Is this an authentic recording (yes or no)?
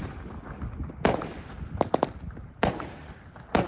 yes